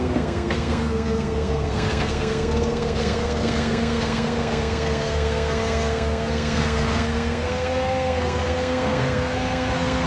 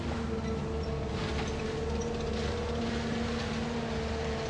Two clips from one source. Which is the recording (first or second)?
second